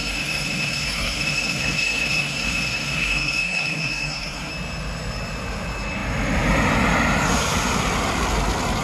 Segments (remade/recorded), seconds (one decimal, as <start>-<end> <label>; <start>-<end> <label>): 0.0-4.5 remade; 4.5-8.8 recorded